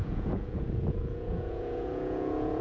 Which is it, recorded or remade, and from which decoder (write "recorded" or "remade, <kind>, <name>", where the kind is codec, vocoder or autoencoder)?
remade, vocoder, Vocos